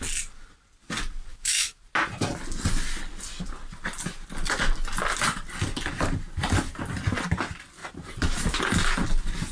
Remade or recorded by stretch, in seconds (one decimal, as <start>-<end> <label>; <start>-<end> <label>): 0.0-1.3 recorded; 1.3-1.8 remade; 1.8-9.5 recorded